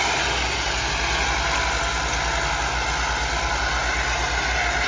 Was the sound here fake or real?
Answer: real